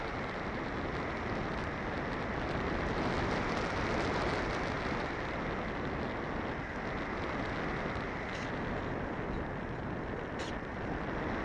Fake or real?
real